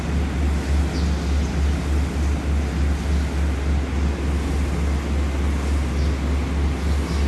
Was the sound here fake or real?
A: real